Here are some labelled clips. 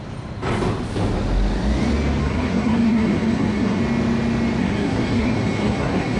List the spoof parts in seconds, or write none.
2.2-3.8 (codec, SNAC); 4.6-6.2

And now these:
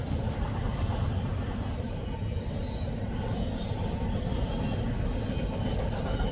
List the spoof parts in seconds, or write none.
0.7-2.2 (vocoder, BigVGAN v2)

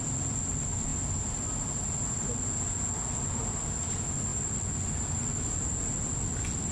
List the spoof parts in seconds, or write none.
none

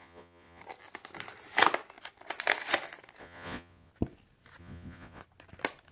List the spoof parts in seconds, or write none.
0.0-0.6 (vocoder, Vocos); 3.2-3.9; 4.6-5.2

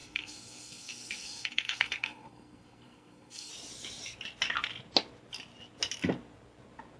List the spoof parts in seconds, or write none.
0.0-3.5 (codec, SNAC)

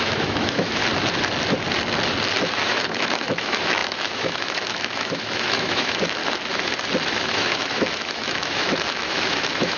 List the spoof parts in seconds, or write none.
0.0-0.8 (autoencoder, DAC-VAE); 2.6-6.2; 7.1-9.8